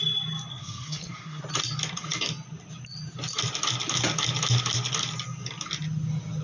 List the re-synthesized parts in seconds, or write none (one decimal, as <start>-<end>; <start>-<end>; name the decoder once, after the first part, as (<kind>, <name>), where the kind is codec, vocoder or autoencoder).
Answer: 0.5-1.4 (codec, SNAC)